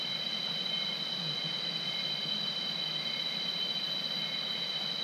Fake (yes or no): no